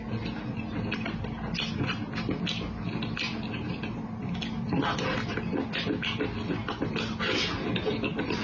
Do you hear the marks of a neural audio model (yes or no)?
no